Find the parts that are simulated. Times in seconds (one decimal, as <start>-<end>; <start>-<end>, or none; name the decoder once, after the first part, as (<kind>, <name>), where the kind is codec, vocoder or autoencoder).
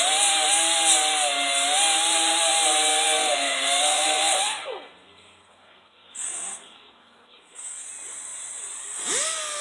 2.9-7.9 (codec, SNAC)